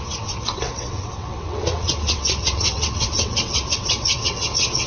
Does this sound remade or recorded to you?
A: remade